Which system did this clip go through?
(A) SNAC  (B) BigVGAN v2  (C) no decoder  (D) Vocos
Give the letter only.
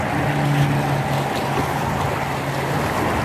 C